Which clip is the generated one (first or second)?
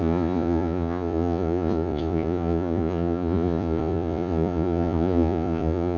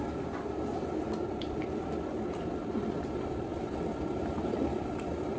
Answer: first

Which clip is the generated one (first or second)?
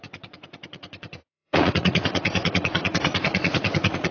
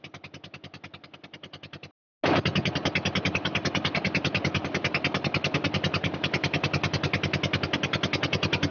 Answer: first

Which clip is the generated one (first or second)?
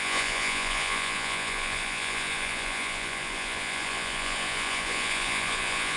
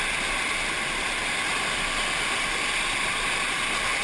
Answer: first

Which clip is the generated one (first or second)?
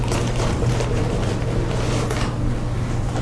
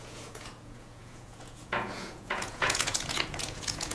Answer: second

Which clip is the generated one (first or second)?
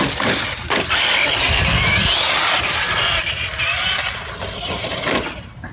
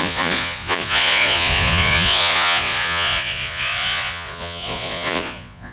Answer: second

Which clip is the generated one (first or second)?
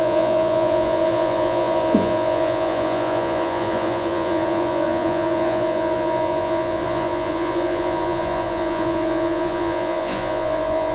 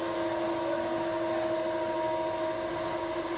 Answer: first